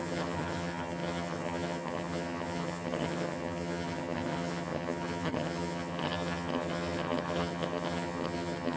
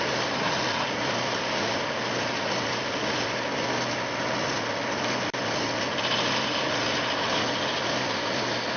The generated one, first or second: first